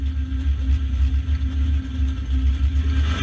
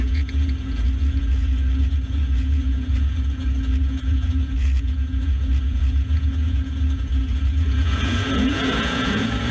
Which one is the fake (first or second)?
second